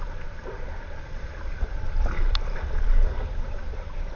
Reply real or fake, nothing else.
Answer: real